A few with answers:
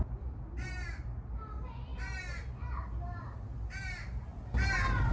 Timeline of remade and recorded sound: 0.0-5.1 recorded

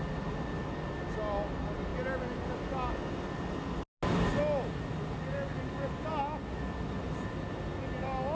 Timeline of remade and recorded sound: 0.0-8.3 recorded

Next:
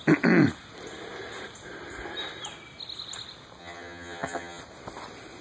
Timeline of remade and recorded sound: 0.0-3.6 recorded; 3.6-4.6 remade; 4.6-5.4 recorded

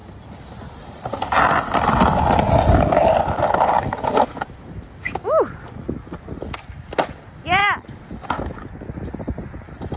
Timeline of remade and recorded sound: 0.0-10.0 recorded

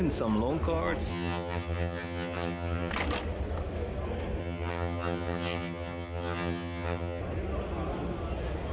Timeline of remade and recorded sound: 0.0-1.1 recorded; 1.1-2.9 remade; 2.9-4.4 recorded; 4.4-7.2 remade; 7.2-8.7 recorded

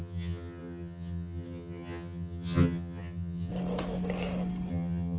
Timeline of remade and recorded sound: 0.0-3.5 remade; 3.5-4.7 recorded; 4.7-5.2 remade

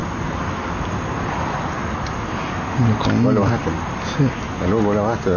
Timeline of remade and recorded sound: 0.0-5.4 recorded

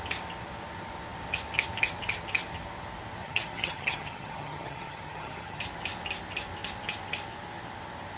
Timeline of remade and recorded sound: 0.0-3.2 recorded; 3.2-5.6 remade; 5.6-8.2 recorded